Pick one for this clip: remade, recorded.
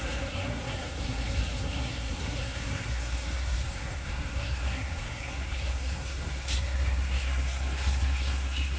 remade